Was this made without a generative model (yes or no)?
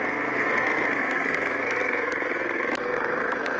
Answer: no